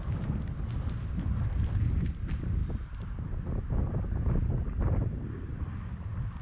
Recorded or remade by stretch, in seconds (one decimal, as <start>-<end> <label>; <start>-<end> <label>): 0.0-6.4 remade